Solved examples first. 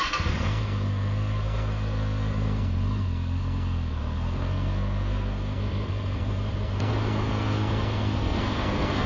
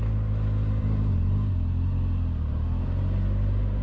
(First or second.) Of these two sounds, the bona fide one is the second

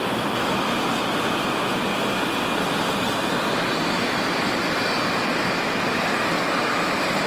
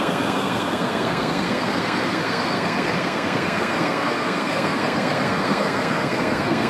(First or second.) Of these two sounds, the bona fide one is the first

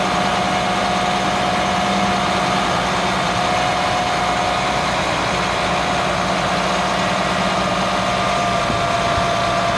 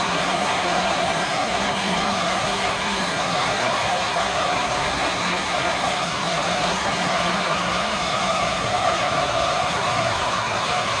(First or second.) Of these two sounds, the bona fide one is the first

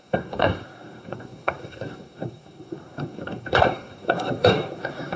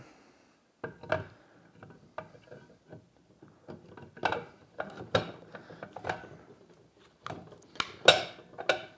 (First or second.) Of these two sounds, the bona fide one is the second